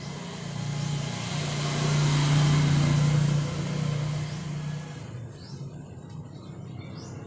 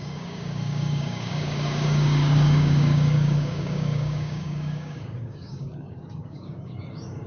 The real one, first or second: first